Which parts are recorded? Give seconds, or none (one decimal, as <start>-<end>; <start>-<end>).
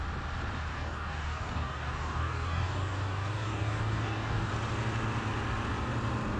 0.0-0.7; 4.5-6.4